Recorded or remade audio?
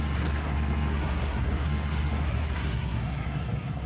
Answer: remade